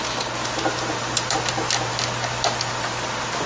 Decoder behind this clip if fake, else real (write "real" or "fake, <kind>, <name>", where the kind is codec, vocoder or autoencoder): real